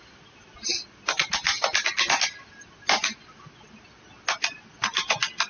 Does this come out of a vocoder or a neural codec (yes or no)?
no